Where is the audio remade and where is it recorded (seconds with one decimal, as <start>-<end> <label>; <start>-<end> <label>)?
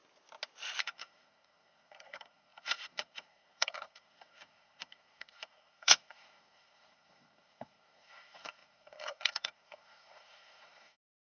0.0-0.8 recorded; 0.8-11.2 remade